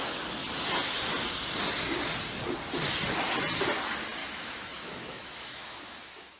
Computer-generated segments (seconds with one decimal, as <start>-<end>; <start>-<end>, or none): 4.2-6.4

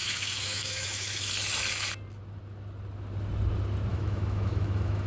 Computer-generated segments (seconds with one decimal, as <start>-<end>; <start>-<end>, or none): 0.0-1.3; 3.9-5.1